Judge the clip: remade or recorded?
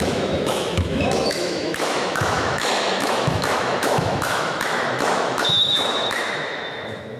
remade